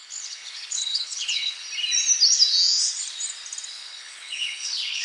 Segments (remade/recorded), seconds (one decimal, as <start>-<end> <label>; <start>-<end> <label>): 0.0-1.6 remade; 1.6-3.7 recorded; 3.7-5.0 remade